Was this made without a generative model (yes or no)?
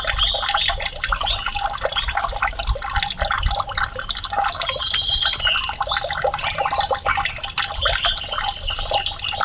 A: yes